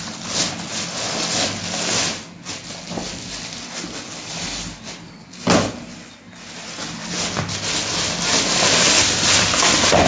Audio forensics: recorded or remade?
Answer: recorded